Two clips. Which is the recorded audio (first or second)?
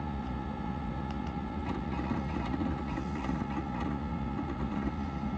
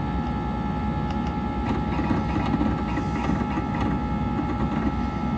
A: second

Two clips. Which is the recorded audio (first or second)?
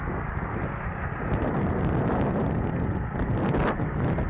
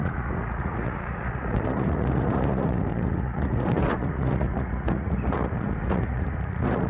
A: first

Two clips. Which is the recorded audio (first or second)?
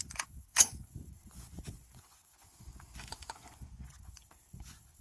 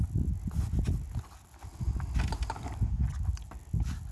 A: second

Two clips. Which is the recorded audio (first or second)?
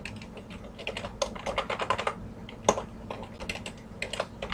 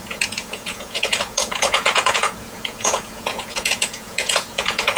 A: first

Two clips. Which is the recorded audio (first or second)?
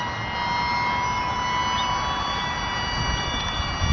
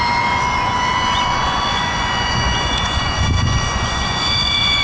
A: first